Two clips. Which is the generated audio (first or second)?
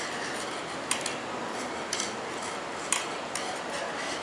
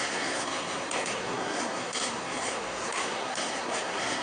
second